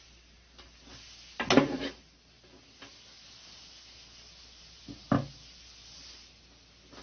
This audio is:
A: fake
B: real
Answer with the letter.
B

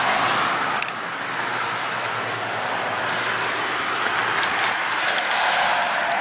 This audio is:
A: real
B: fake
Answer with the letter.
A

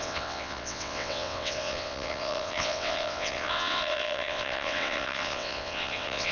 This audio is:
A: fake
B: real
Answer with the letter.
A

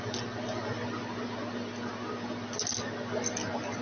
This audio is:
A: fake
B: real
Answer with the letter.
B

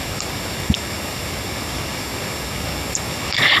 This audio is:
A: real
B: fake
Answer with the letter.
B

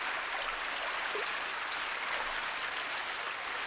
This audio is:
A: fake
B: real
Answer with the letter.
B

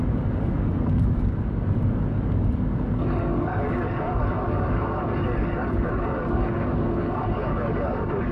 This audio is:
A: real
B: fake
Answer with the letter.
B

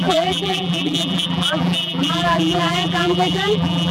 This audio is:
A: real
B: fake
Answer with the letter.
B